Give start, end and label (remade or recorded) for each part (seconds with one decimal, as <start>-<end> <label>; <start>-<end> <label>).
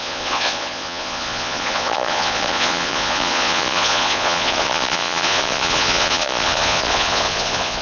0.0-7.8 remade